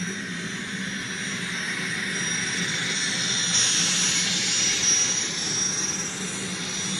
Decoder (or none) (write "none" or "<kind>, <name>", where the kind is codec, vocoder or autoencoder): none